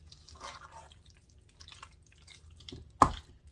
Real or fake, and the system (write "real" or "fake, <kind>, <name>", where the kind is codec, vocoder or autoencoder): real